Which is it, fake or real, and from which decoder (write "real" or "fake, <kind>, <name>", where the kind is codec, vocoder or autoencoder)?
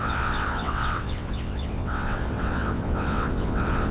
fake, vocoder, WaveNeXt